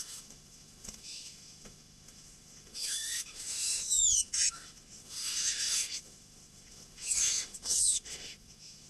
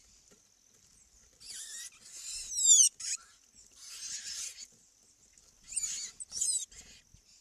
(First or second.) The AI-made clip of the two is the first